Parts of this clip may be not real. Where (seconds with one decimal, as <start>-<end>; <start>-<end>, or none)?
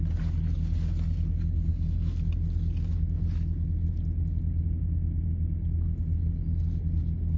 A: none